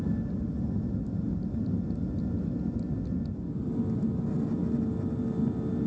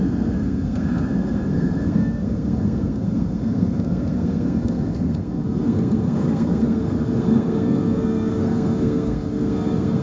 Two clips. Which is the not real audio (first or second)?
second